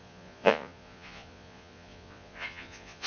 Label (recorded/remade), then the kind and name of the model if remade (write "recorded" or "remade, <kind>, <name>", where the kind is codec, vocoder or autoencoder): remade, vocoder, Vocos